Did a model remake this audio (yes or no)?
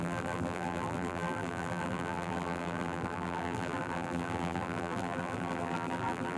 yes